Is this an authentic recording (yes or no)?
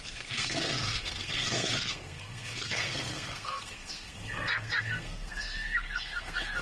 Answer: no